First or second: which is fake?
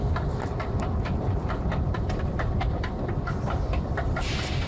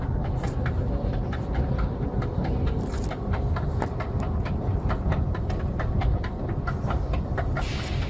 first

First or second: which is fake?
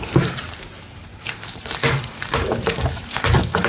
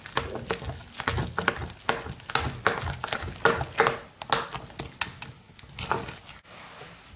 first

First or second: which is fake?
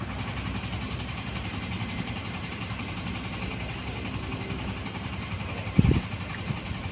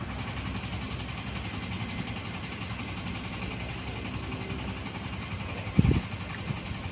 first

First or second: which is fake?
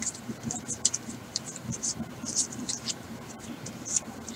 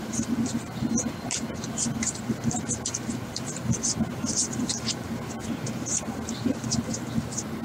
first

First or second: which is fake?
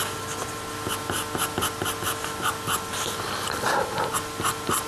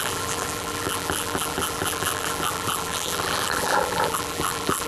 second